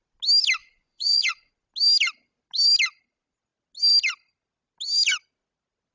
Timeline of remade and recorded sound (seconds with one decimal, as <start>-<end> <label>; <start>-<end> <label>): 0.0-0.6 recorded; 0.6-1.5 remade; 1.5-5.9 recorded